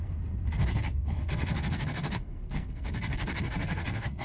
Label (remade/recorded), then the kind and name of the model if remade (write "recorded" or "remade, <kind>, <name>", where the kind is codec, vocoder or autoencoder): remade, codec, SNAC